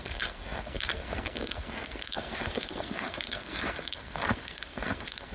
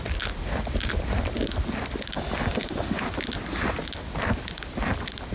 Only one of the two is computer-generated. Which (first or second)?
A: first